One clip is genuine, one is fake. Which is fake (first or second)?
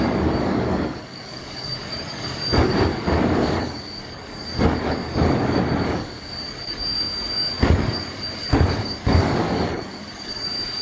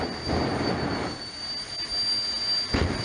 first